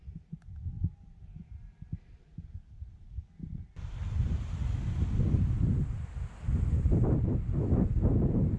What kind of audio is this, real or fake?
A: real